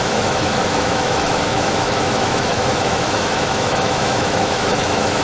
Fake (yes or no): yes